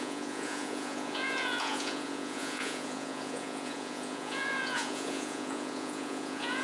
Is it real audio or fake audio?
fake